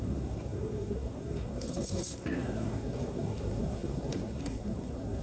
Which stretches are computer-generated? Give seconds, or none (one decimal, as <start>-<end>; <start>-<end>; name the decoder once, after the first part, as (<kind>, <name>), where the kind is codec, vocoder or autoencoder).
0.0-5.2 (codec, SNAC)